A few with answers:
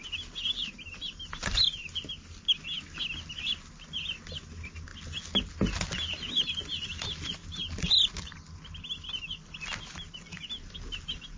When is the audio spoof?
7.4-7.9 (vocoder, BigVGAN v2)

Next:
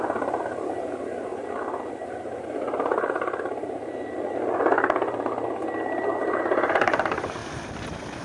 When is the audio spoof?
0.0-1.3 (vocoder, BigVGAN v2); 1.9-3.8; 6.1-7.4

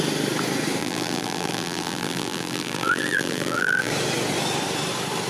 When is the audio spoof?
0.8-3.9 (vocoder, BigVGAN v2)

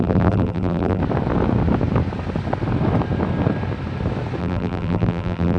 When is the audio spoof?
0.0-1.0 (vocoder, BigVGAN v2); 4.4-5.6

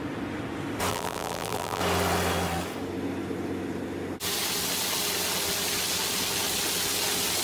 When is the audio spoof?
0.9-1.8 (vocoder, BigVGAN v2)

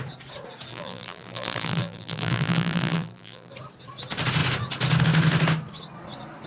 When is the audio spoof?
0.7-3.5 (vocoder, BigVGAN v2)